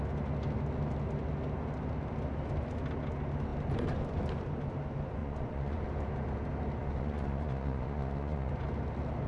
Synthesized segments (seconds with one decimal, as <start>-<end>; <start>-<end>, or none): 5.2-5.8; 6.8-8.5